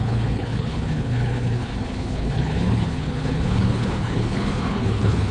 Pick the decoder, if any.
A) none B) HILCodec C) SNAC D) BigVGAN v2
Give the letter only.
B